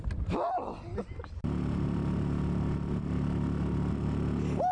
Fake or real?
real